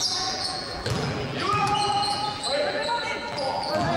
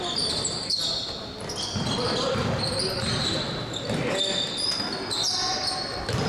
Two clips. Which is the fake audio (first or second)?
first